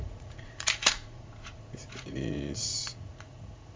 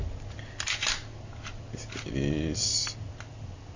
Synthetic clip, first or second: first